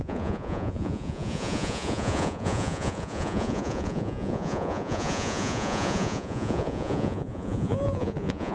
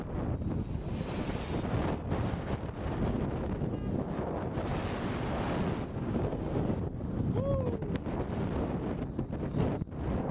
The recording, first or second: second